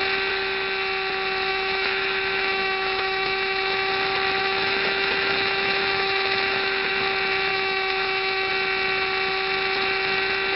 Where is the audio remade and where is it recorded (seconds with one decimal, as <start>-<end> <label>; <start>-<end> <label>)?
0.0-1.5 recorded; 1.5-3.9 remade; 3.9-4.4 recorded; 4.4-6.9 remade; 6.9-7.5 recorded; 7.5-8.5 remade; 8.5-10.6 recorded